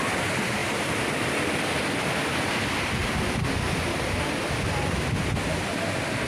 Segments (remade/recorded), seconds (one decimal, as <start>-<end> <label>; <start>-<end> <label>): 0.0-6.3 recorded

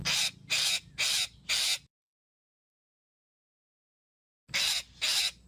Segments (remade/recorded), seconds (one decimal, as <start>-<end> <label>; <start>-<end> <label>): 0.0-5.5 recorded

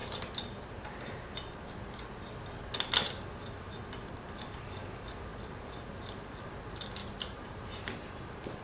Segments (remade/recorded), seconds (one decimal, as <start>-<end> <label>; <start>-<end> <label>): 0.0-7.0 recorded; 7.0-8.1 remade; 8.1-8.6 recorded

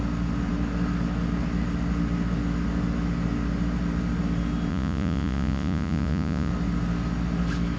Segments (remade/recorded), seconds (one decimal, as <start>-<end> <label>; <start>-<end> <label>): 0.0-4.7 recorded; 4.7-6.5 remade; 6.5-7.8 recorded

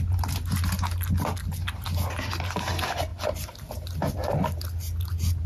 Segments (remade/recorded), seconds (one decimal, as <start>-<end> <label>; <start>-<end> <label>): 0.0-5.5 recorded